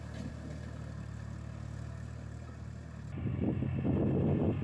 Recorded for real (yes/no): yes